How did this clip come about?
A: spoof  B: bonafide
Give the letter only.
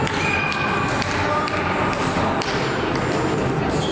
B